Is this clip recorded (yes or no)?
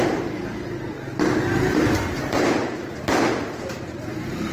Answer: yes